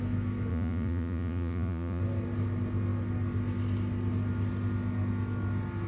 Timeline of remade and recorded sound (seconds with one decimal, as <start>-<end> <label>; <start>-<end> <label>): 0.0-0.5 recorded; 0.5-2.0 remade; 2.0-5.9 recorded

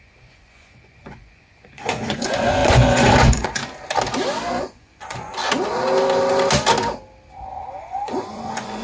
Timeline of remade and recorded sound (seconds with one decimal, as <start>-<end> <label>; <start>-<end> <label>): 0.0-3.6 remade; 3.6-4.5 recorded; 4.5-5.4 remade; 5.4-7.8 recorded; 7.8-8.8 remade

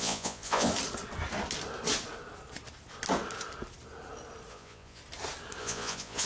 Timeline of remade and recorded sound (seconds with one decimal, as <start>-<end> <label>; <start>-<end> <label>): 0.0-0.7 remade; 0.7-4.5 recorded; 4.5-5.0 remade; 5.0-5.6 recorded; 5.6-6.3 remade

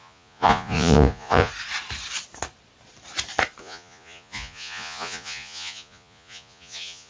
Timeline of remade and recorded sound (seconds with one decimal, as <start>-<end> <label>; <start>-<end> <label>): 0.0-1.5 remade; 1.5-3.6 recorded; 3.6-7.1 remade

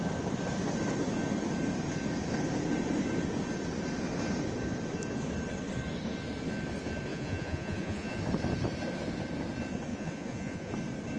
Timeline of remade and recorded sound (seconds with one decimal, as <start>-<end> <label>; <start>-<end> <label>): 0.0-7.1 recorded; 7.1-8.2 remade; 8.2-9.9 recorded; 9.9-10.7 remade; 10.7-11.2 recorded

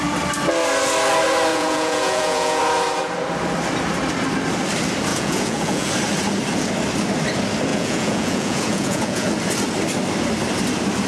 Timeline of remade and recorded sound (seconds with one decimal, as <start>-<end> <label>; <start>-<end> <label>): 0.0-1.5 recorded; 1.5-2.6 remade; 2.6-5.1 recorded; 5.1-5.9 remade; 5.9-7.7 recorded; 7.7-9.3 remade; 9.3-11.1 recorded

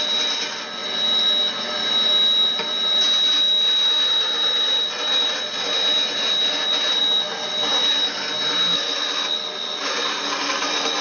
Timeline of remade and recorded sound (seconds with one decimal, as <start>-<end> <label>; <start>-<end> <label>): 0.0-11.0 recorded